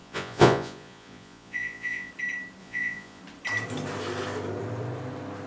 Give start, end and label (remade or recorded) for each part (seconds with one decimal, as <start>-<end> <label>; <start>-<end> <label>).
0.0-2.1 remade; 2.1-2.6 recorded; 2.6-3.2 remade; 3.2-5.5 recorded